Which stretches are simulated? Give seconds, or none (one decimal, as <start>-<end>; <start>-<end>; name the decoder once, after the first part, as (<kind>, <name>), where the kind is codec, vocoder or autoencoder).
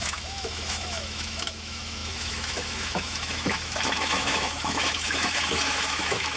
0.0-6.4 (autoencoder, DAC-VAE)